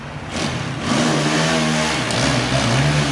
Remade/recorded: recorded